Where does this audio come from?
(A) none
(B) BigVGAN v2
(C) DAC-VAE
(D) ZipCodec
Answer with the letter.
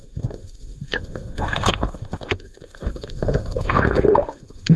C